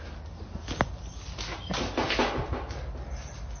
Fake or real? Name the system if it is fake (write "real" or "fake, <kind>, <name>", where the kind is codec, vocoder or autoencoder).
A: real